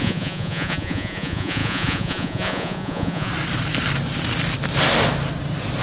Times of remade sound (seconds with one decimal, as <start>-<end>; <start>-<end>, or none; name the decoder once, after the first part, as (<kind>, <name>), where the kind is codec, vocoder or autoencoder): 0.0-3.3 (vocoder, Vocos)